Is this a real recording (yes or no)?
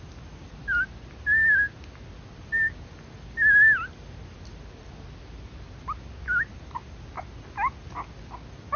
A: yes